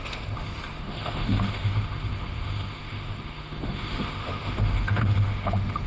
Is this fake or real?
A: fake